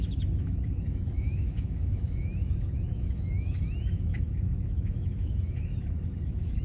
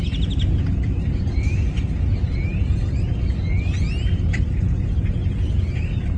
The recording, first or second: second